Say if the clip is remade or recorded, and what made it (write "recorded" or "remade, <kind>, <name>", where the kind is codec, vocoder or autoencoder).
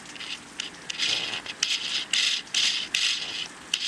recorded